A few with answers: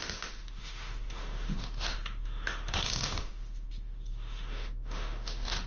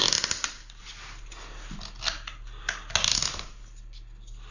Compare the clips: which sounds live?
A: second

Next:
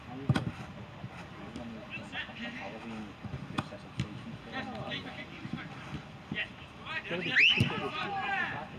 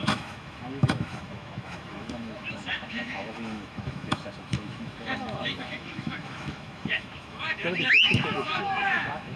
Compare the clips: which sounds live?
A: first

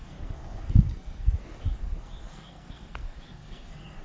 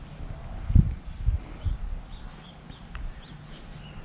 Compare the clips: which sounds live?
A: second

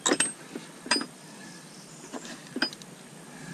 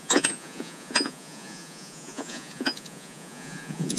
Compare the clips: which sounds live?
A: first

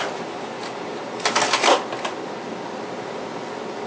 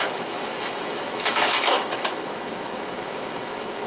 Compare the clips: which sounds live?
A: first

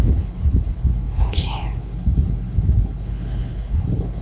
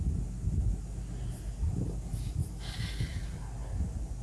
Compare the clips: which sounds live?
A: second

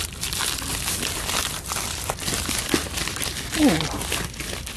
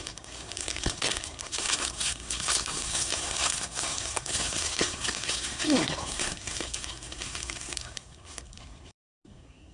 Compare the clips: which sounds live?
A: first